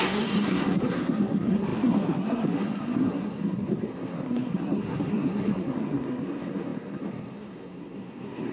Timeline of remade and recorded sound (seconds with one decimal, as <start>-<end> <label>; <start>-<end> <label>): 0.0-8.5 remade